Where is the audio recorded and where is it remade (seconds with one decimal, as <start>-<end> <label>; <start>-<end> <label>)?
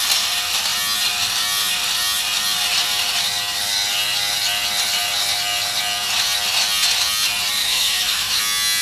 0.0-7.6 recorded; 7.6-8.4 remade; 8.4-8.8 recorded